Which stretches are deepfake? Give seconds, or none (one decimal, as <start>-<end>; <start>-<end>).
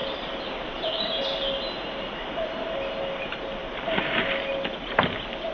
0.0-0.9